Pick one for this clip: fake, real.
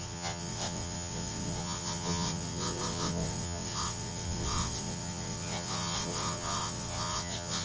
fake